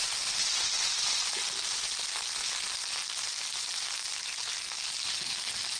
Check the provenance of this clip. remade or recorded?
recorded